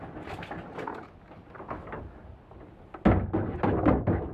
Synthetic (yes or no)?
no